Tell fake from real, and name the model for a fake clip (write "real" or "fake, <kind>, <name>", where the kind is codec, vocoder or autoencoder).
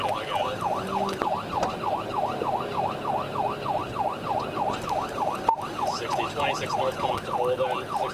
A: real